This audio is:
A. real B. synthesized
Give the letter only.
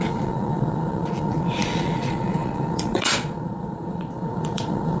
B